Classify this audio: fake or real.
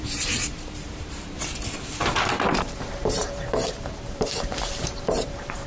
fake